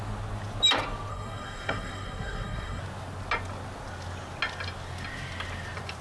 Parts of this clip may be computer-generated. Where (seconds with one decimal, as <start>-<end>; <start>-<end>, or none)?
1.1-2.8